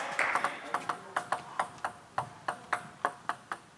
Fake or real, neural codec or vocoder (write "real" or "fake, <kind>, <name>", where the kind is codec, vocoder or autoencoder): real